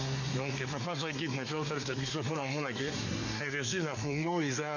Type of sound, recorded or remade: remade